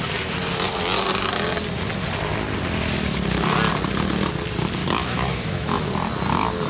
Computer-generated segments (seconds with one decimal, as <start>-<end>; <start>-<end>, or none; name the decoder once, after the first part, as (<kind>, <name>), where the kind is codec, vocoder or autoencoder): 4.8-5.9 (autoencoder, DAC-VAE)